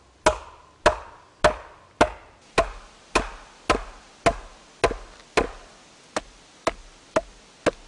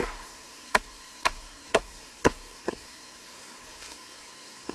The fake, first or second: second